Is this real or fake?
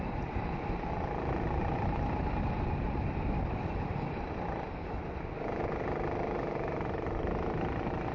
fake